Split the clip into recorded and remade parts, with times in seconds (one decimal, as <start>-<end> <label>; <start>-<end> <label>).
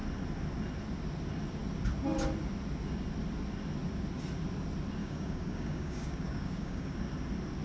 0.0-5.0 recorded; 5.0-7.0 remade; 7.0-7.6 recorded